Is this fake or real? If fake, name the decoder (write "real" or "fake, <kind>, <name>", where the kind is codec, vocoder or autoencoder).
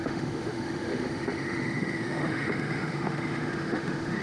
fake, autoencoder, DAC-VAE